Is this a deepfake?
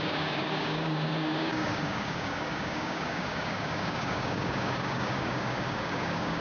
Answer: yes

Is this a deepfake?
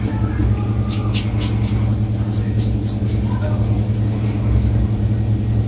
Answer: no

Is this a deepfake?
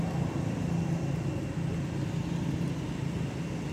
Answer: no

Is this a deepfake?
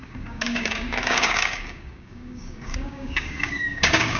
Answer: yes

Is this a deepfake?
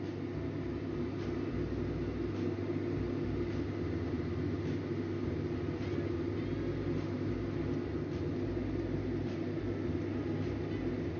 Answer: no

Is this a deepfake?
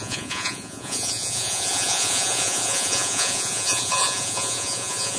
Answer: yes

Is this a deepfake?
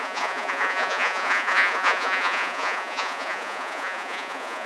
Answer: yes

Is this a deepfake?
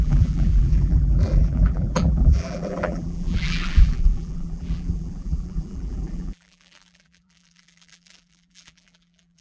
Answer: yes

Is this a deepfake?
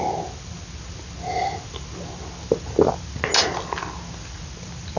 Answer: no